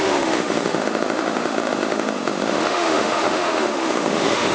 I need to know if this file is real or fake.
fake